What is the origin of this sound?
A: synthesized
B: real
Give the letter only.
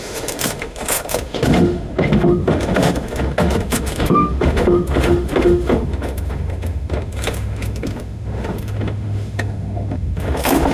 A